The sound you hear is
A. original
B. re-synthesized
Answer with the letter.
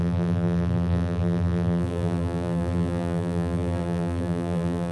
B